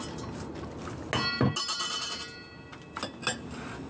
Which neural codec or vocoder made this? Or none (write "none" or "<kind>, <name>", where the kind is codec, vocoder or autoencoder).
none